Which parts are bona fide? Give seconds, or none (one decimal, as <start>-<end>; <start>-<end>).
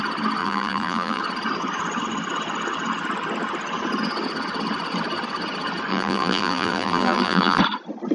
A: 0.0-0.4; 1.2-5.9; 7.6-8.1